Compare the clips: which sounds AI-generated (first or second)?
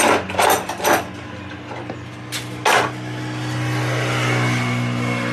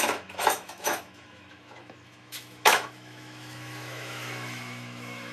second